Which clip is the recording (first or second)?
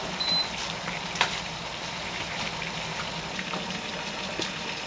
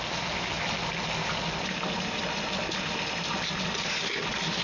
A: second